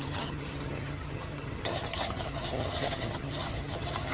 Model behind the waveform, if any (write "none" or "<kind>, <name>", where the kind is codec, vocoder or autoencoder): vocoder, HiFi-GAN